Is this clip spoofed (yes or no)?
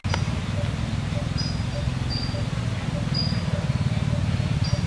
no